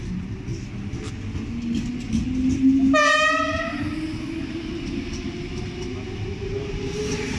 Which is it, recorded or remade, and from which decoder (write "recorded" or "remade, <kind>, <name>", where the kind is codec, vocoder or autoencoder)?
recorded